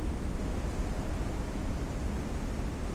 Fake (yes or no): no